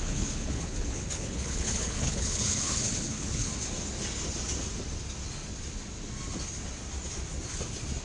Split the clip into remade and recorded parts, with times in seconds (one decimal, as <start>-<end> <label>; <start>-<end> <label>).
0.0-3.5 remade; 3.5-8.0 recorded

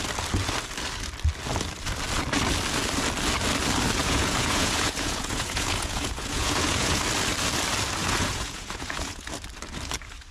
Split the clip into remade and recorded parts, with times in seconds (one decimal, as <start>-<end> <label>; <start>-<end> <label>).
0.0-4.0 recorded; 4.0-7.0 remade; 7.0-8.0 recorded; 8.0-9.3 remade; 9.3-10.3 recorded

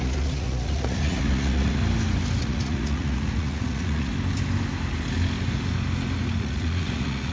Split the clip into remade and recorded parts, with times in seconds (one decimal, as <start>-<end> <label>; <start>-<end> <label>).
0.0-1.8 remade; 1.8-2.4 recorded; 2.4-4.1 remade; 4.1-6.4 recorded; 6.4-7.3 remade

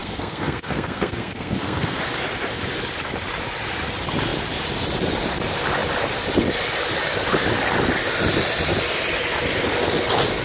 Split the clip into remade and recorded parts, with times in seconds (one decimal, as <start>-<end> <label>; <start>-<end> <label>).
0.0-2.0 remade; 2.0-10.4 recorded

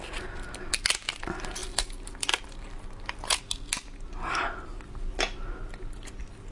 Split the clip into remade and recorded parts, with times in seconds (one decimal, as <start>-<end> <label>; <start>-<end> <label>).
0.0-6.5 recorded